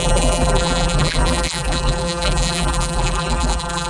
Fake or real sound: fake